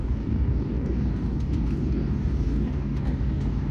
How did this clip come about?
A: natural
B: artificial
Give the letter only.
B